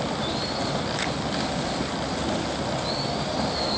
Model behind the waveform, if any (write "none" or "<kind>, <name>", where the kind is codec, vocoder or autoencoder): none